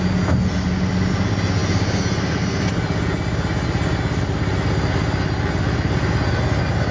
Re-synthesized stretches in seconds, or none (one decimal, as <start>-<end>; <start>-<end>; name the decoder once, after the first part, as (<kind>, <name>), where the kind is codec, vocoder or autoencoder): none